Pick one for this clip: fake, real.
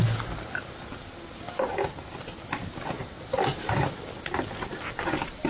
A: real